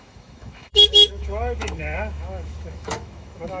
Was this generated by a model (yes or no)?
yes